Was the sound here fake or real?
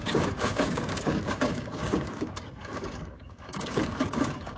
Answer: fake